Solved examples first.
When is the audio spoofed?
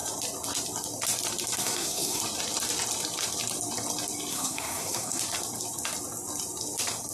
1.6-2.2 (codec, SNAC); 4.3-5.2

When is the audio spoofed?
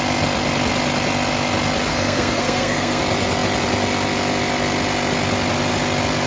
1.9-3.0 (codec, SNAC)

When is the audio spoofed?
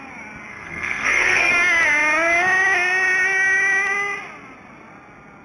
0.5-1.5 (codec, SNAC)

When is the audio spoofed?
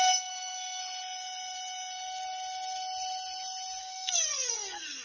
0.0-0.8 (codec, SNAC); 3.8-5.0